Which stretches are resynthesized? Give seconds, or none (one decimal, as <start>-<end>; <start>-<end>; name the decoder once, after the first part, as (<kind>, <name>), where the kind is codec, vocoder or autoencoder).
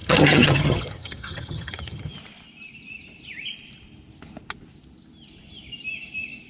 0.0-2.1 (vocoder, HiFi-GAN)